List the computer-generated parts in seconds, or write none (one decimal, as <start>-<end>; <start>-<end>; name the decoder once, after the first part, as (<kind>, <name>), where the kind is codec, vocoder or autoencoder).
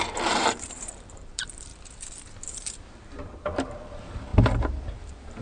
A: 0.0-1.7 (vocoder, BigVGAN v2); 2.5-4.3; 5.0-5.4